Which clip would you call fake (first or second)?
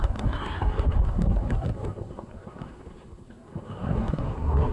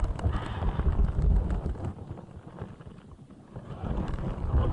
first